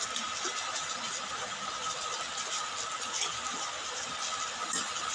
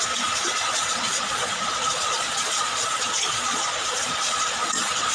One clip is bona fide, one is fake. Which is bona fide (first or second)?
first